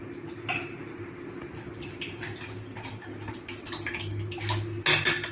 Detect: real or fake real